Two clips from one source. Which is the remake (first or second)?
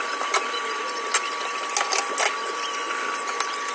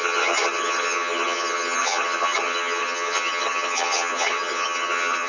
second